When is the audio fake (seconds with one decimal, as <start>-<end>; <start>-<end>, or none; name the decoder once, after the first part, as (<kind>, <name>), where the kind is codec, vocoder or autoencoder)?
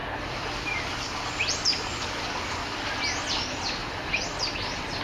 0.0-3.0 (vocoder, BigVGAN v2); 3.8-5.0